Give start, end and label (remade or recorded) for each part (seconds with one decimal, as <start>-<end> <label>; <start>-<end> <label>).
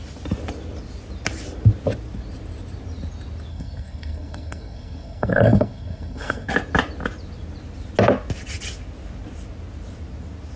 0.0-3.5 recorded; 3.5-6.5 remade; 6.5-10.6 recorded